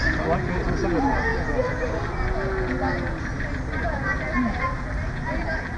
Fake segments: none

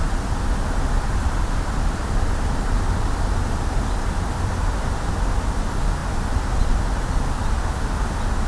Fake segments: 0.0-5.1; 6.0-6.8